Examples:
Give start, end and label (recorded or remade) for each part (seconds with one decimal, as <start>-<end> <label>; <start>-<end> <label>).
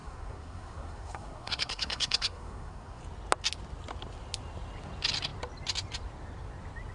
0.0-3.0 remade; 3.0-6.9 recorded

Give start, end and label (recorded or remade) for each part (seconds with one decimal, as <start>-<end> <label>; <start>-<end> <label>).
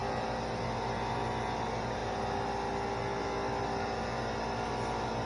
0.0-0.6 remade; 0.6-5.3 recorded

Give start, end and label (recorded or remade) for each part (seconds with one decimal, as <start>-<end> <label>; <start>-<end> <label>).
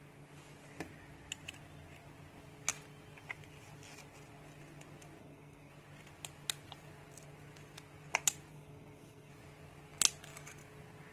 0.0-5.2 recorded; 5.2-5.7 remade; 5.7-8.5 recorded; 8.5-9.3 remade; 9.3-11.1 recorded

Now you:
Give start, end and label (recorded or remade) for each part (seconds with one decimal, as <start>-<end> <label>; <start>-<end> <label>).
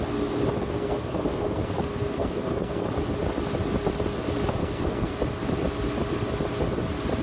0.0-0.6 recorded; 0.6-2.9 remade; 2.9-4.6 recorded; 4.6-5.2 remade; 5.2-7.2 recorded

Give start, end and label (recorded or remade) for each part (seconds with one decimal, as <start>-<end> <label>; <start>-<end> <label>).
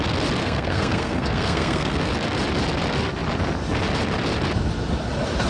0.0-0.4 recorded; 0.4-2.1 remade; 2.1-5.5 recorded